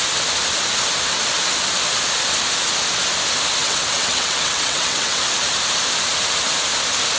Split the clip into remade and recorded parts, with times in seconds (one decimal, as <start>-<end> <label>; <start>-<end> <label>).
0.0-3.6 recorded; 3.6-5.2 remade; 5.2-7.2 recorded